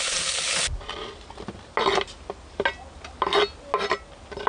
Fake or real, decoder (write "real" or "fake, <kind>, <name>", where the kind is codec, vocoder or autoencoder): real